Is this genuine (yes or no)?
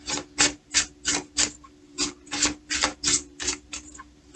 yes